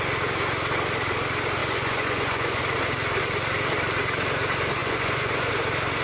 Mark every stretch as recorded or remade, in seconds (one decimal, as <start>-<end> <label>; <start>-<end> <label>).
0.0-1.6 recorded; 1.6-2.6 remade; 2.6-4.8 recorded; 4.8-5.5 remade; 5.5-6.0 recorded